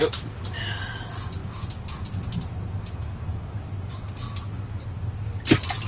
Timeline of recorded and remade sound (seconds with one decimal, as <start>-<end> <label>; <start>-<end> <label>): 0.0-5.9 recorded